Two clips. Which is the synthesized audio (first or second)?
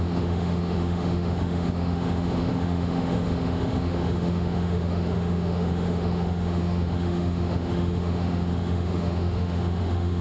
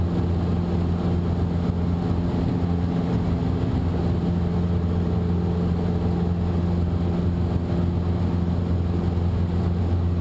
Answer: first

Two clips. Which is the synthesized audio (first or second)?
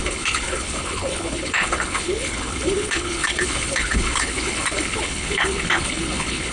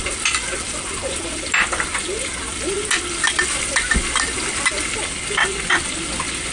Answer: first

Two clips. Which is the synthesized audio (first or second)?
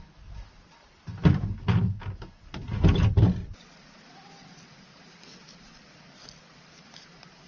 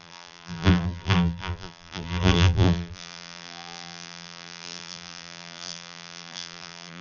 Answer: second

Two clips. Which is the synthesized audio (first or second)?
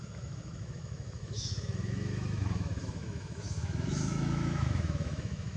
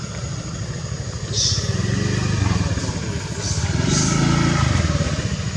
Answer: first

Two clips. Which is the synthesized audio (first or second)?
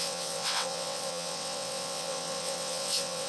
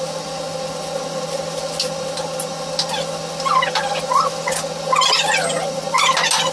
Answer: first